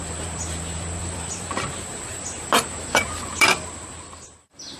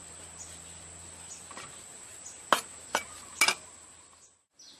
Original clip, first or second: second